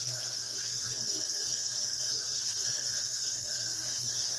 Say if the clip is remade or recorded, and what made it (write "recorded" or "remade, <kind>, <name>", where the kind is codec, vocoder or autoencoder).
remade, codec, SNAC